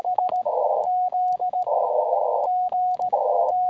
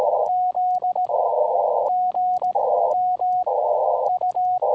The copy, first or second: first